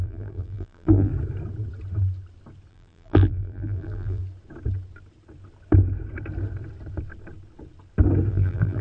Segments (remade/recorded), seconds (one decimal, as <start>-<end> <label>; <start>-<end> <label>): 0.0-1.1 remade; 1.1-2.7 recorded; 2.7-4.2 remade; 4.2-8.3 recorded; 8.3-8.8 remade